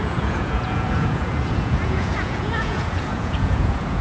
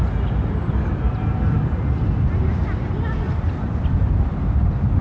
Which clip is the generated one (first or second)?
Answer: first